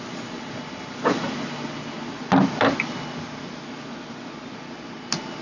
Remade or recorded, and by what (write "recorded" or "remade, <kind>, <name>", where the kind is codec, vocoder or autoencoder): recorded